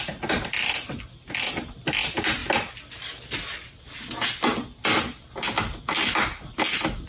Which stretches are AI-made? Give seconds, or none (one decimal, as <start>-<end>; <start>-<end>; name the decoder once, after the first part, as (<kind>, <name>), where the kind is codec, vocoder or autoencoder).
none

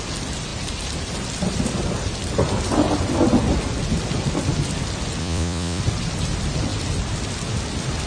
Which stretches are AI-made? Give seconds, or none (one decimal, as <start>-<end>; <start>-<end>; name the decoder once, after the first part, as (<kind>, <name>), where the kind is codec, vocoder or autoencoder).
5.2-5.8 (vocoder, Vocos)

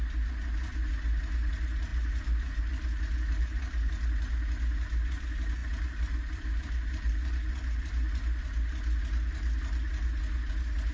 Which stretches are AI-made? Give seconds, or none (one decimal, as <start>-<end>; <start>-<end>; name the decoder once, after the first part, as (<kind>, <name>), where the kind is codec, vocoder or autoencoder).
none

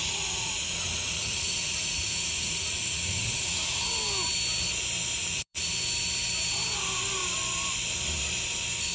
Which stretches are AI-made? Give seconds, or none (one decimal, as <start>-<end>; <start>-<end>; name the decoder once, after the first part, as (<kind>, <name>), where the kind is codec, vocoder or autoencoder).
0.0-3.8 (vocoder, Vocos); 5.2-5.7

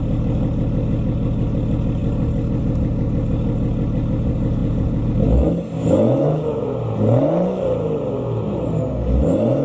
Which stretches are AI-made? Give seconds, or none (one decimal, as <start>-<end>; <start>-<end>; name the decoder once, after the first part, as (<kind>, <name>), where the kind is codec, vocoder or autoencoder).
4.6-5.1 (vocoder, Vocos)

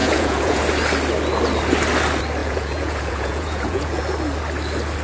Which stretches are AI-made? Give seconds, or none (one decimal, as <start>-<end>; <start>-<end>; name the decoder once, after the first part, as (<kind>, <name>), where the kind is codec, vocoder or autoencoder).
0.0-0.6 (vocoder, Vocos); 2.4-4.0